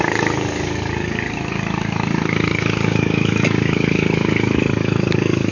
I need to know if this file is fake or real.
fake